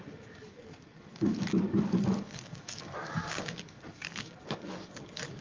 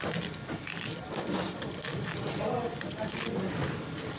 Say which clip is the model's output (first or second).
first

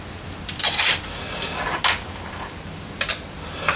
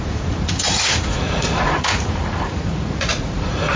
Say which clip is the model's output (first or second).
second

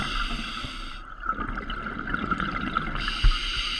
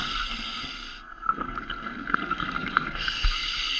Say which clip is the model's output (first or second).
second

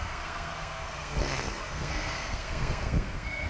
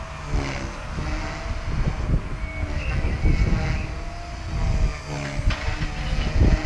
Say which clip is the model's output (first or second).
first